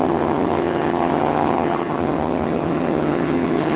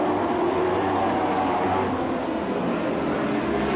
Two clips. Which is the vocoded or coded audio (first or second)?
first